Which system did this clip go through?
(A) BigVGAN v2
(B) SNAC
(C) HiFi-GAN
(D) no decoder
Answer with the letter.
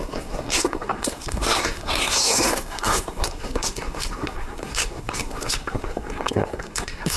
B